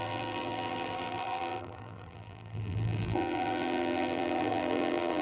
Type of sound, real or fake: fake